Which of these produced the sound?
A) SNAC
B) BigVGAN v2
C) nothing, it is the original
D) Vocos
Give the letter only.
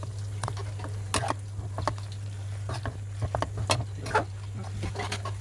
C